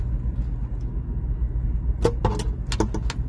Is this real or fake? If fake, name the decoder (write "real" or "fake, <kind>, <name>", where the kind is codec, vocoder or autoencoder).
real